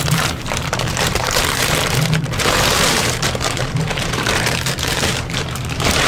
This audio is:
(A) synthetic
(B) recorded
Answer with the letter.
A